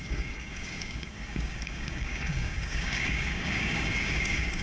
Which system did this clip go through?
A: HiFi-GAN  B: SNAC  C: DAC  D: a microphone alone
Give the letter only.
C